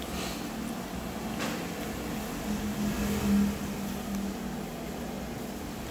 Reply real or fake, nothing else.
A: real